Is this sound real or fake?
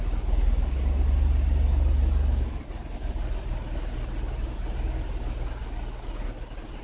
real